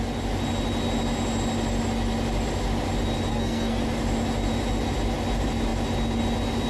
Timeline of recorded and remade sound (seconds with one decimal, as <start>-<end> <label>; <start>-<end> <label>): 0.0-3.3 recorded; 3.3-3.8 remade; 3.8-6.7 recorded